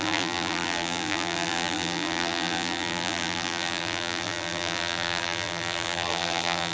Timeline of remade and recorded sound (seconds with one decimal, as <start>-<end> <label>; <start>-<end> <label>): 0.0-6.7 remade